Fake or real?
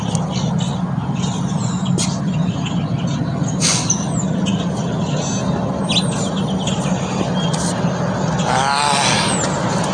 real